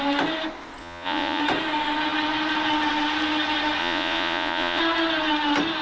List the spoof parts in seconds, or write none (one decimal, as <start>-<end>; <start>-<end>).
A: 0.8-1.4; 3.8-4.8